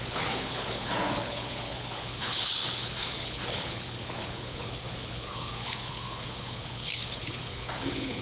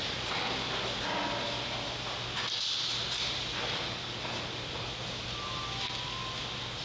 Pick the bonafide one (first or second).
second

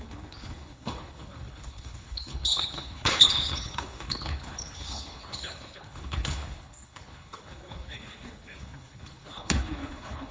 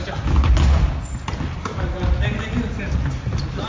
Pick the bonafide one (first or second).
second